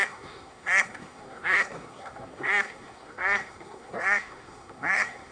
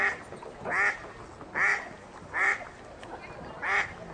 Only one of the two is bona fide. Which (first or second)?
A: second